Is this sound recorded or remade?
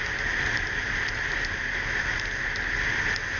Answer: recorded